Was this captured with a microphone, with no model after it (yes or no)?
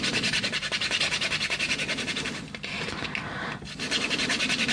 yes